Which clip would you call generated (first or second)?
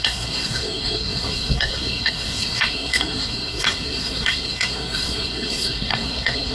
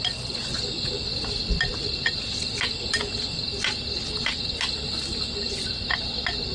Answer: first